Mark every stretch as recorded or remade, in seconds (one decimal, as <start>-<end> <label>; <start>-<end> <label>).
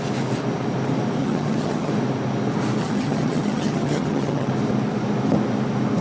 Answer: 0.0-1.2 recorded; 1.2-1.9 remade; 1.9-2.8 recorded; 2.8-4.5 remade; 4.5-6.0 recorded